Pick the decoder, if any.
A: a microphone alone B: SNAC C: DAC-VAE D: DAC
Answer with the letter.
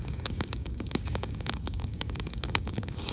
D